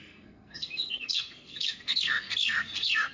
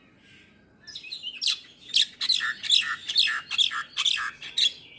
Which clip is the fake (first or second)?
first